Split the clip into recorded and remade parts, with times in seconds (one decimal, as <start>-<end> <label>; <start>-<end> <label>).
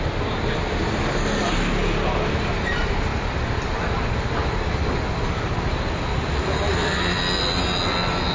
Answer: 0.0-6.1 recorded; 6.1-7.0 remade; 7.0-8.3 recorded